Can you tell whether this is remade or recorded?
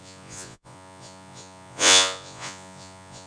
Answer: remade